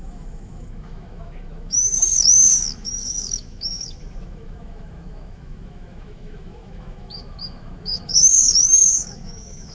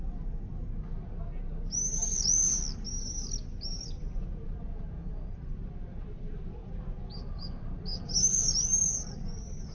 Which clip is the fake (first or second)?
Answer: first